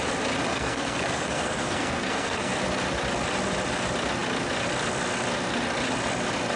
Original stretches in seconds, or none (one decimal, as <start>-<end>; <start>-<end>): 0.0-0.5; 2.5-6.6